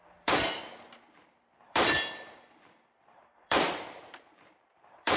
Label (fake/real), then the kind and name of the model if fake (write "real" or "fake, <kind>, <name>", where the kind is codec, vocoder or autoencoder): fake, vocoder, BigVGAN v2